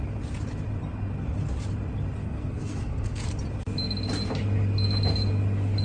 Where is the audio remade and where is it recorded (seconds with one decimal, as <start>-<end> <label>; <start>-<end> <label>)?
0.0-2.2 recorded; 2.2-3.2 remade; 3.2-5.8 recorded